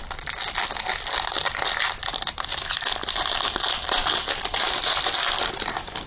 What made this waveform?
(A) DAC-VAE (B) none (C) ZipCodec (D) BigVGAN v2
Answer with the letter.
B